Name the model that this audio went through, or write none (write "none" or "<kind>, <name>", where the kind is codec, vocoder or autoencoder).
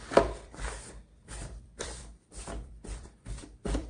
vocoder, BigVGAN v2